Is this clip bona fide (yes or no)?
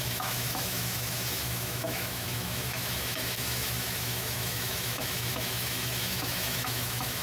no